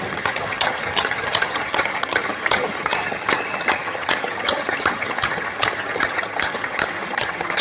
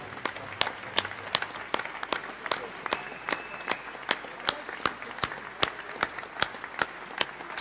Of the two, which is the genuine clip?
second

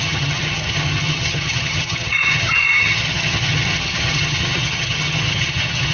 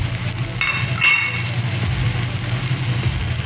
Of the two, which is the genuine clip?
second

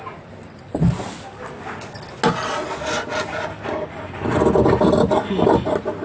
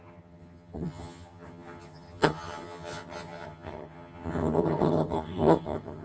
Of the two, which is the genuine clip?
first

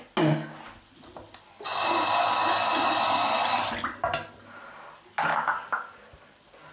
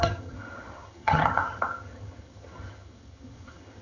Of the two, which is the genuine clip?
first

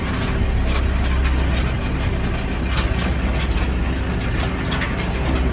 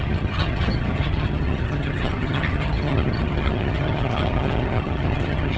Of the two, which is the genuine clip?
first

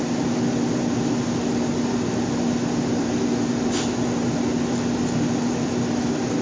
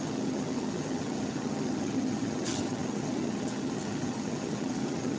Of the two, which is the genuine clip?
first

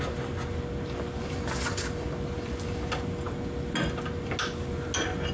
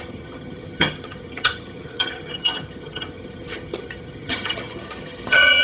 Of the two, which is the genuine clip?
first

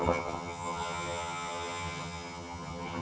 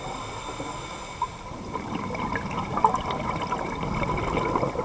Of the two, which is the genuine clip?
second